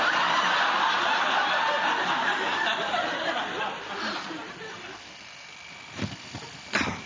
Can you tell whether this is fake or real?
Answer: real